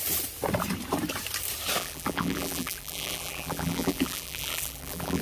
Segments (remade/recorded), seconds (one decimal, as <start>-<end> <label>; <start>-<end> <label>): 0.0-1.8 recorded; 1.8-5.2 remade